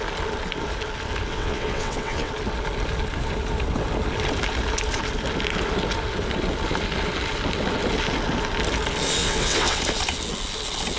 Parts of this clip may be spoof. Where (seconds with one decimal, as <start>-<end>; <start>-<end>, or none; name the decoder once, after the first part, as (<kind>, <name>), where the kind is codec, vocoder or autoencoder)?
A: 1.3-2.3 (vocoder, WaveNeXt); 9.2-9.8